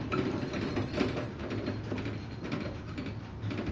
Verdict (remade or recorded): recorded